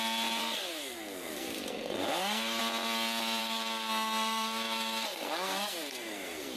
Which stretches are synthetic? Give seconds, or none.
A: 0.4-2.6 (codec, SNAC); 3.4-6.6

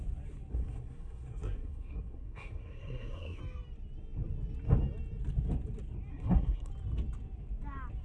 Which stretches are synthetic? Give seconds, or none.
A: 0.5-3.4 (codec, SNAC); 6.1-6.7

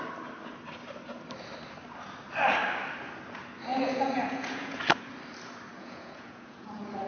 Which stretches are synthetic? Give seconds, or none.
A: 3.7-4.8 (vocoder, Vocos); 5.7-7.1

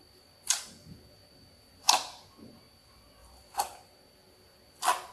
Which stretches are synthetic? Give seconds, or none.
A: none

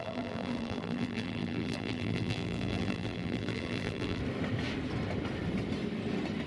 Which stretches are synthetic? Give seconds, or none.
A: 0.0-4.2 (vocoder, BigVGAN v2)

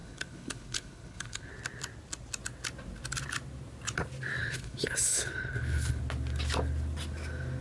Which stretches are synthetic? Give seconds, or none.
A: 0.0-1.5 (codec, HILCodec); 4.4-6.0

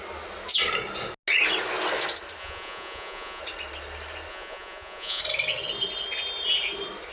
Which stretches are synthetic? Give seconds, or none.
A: 2.4-3.4 (vocoder, Vocos); 4.3-5.2